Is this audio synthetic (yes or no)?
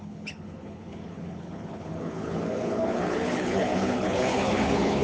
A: yes